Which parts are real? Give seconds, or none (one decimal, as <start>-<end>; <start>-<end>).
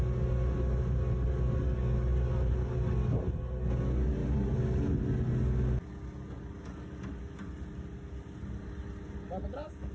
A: 0.0-9.9